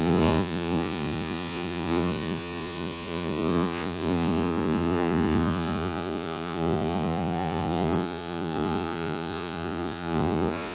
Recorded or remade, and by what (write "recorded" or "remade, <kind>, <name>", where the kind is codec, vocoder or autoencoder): remade, vocoder, Vocos